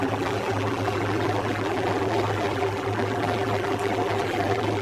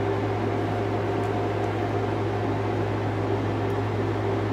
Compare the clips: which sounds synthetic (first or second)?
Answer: first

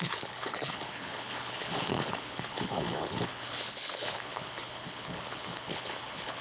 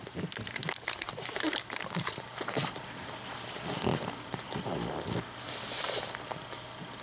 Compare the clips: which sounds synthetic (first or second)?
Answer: first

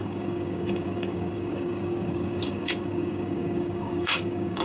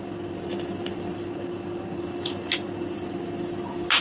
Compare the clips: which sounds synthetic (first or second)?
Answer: first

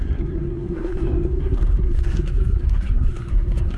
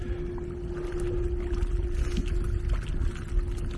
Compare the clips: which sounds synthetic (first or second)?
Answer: first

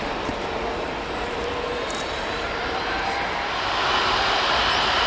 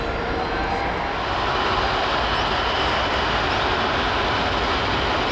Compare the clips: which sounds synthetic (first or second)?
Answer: first